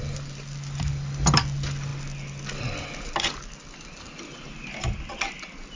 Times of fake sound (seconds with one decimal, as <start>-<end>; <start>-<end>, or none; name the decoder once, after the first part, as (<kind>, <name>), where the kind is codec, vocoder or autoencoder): none